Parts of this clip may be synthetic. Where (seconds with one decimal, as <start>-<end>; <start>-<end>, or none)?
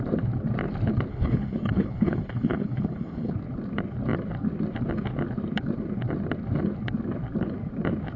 1.1-3.3